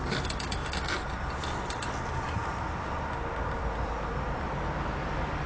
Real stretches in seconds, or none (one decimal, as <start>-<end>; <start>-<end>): 0.0-5.5